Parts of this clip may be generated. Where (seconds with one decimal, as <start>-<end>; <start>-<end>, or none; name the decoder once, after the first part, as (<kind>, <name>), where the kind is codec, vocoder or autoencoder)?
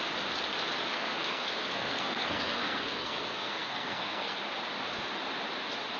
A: 0.9-4.4 (codec, SNAC)